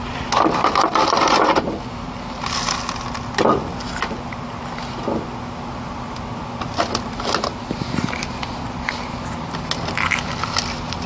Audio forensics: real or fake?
real